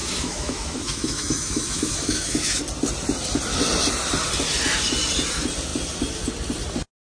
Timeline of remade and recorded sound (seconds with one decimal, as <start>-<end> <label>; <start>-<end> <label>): 0.0-2.6 remade; 2.6-7.1 recorded